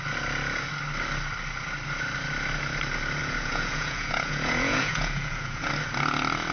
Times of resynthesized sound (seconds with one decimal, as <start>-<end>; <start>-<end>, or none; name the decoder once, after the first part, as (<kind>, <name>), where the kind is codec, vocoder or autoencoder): 3.2-5.7 (vocoder, Vocos)